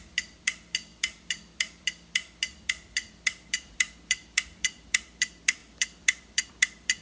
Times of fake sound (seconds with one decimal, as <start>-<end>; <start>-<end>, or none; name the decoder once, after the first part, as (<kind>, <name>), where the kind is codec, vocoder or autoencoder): 0.0-7.0 (vocoder, BigVGAN v2)